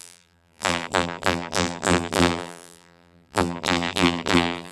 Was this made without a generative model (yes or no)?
no